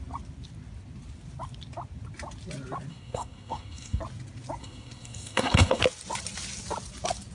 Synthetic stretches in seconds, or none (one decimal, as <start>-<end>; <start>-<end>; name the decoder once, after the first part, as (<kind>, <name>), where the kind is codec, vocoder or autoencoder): 2.9-4.0 (codec, SNAC); 4.6-5.8